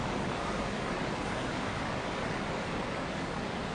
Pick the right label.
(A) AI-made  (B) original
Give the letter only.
A